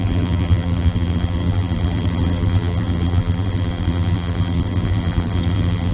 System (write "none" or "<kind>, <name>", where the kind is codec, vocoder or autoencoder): vocoder, BigVGAN v2